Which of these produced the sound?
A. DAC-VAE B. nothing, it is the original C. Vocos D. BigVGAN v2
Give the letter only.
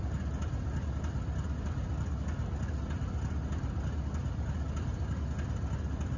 B